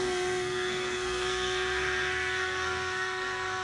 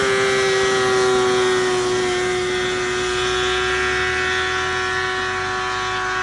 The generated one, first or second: first